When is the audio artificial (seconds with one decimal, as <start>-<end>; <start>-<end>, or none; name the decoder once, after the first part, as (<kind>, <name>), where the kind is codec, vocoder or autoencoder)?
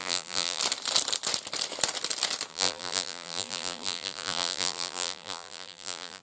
0.0-0.6 (vocoder, BigVGAN v2); 2.5-6.2